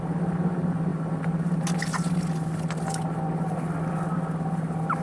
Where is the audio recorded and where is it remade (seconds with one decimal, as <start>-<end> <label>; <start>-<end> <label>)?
0.0-5.0 recorded